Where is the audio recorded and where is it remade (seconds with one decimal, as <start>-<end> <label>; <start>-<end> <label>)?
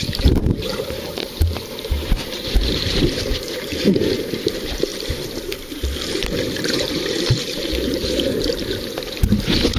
0.0-9.8 remade